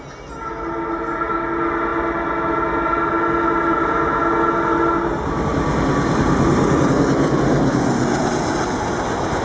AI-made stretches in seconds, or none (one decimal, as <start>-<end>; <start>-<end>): none